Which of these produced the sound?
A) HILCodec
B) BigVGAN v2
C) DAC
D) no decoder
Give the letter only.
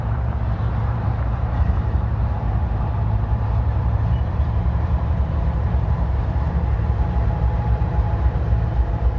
B